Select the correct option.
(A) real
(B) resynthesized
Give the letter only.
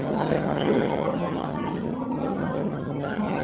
B